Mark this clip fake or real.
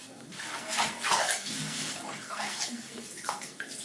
fake